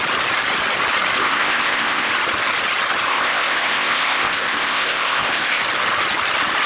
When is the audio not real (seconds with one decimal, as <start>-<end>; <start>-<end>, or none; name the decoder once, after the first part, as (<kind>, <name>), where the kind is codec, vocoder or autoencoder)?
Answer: 1.2-2.1 (codec, ZipCodec); 3.1-5.6